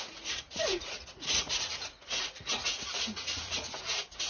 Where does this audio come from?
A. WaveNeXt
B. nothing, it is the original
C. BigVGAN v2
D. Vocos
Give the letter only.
D